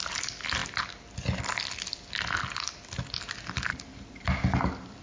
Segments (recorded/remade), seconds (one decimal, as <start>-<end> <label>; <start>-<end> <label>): 0.0-5.0 recorded